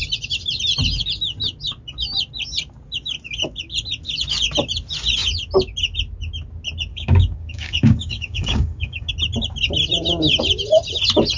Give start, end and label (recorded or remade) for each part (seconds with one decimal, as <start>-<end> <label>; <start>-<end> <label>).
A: 0.0-6.9 recorded; 6.9-9.1 remade; 9.1-11.4 recorded